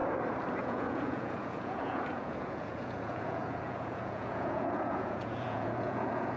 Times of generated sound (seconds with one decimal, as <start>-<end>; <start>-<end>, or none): 0.6-6.4